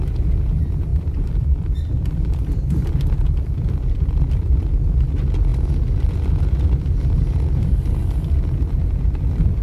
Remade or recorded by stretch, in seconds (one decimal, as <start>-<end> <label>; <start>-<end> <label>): 0.0-0.9 recorded; 0.9-4.8 remade; 4.8-9.6 recorded